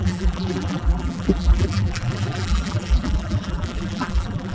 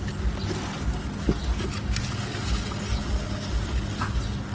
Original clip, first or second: second